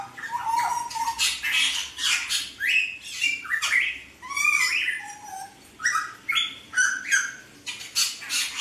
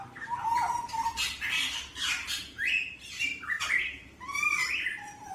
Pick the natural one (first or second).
first